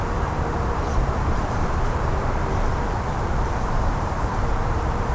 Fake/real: fake